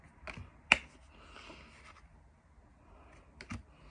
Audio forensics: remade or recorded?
recorded